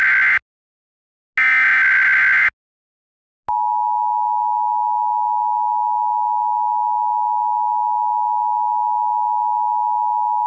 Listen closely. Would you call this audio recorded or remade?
recorded